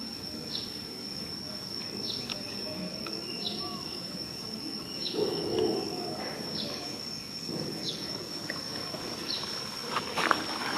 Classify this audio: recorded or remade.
remade